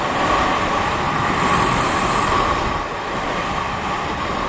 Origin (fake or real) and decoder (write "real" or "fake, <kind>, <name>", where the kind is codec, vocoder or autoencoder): fake, vocoder, BigVGAN v2